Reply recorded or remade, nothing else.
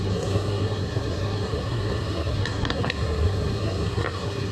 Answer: remade